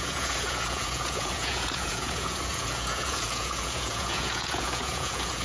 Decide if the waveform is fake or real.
fake